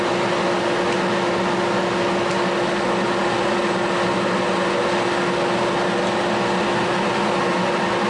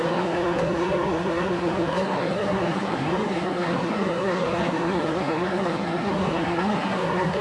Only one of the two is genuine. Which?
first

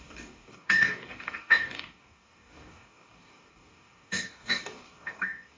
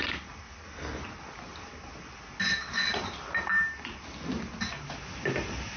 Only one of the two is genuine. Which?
second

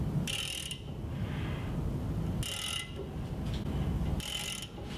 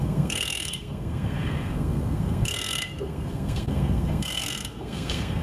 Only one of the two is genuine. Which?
first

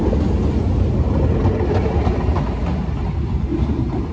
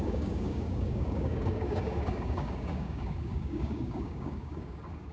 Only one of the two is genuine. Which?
first